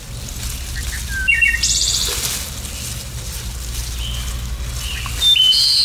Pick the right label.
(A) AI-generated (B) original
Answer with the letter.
B